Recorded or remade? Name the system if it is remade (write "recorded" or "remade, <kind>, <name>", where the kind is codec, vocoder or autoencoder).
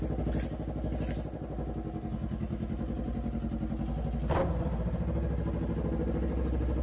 recorded